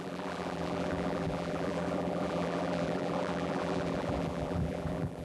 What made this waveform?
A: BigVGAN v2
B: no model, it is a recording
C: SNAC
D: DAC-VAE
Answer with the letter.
A